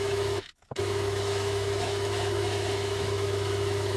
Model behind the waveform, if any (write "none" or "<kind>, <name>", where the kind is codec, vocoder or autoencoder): autoencoder, DAC-VAE